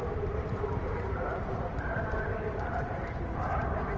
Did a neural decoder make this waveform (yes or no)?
yes